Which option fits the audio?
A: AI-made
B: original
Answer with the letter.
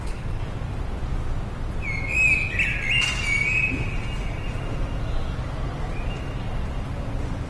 B